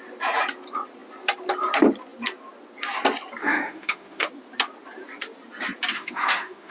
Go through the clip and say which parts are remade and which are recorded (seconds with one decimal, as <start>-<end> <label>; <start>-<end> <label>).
0.0-3.4 recorded; 3.4-4.3 remade; 4.3-5.9 recorded; 5.9-6.7 remade